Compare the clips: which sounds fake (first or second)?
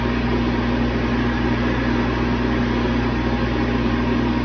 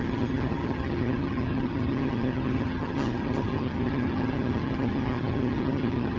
second